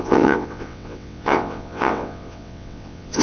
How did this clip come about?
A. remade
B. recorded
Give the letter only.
A